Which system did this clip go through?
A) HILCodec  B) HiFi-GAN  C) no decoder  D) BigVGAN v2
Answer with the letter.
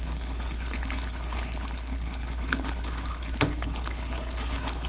A